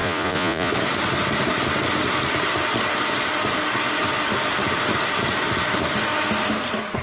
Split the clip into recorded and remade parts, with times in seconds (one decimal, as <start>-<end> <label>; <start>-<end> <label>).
0.0-0.7 remade; 0.7-7.0 recorded